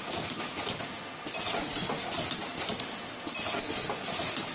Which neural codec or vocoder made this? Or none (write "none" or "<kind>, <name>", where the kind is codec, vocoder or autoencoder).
none